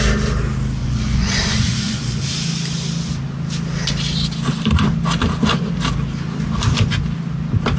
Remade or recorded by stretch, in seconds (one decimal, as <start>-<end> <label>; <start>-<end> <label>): 0.0-0.8 recorded; 0.8-2.2 remade; 2.2-7.8 recorded